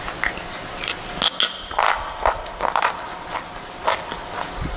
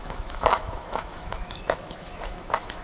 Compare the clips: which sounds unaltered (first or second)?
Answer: first